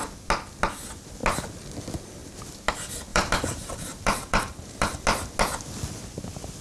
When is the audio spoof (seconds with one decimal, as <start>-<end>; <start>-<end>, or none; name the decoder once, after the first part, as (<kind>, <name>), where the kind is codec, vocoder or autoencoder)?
3.1-5.0 (vocoder, BigVGAN v2)